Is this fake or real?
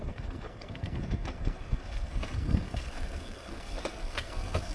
fake